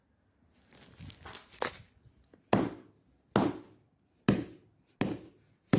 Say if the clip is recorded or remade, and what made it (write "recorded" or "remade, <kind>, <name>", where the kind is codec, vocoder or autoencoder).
recorded